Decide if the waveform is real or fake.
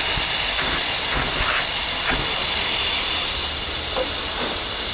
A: real